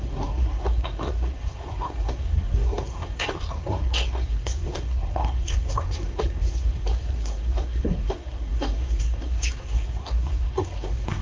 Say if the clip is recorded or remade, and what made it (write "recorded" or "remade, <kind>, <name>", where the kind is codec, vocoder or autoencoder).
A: remade, codec, SNAC